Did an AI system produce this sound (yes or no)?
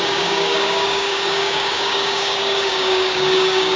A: yes